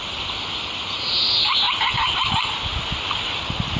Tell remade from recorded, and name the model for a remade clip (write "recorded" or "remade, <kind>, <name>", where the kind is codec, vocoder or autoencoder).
recorded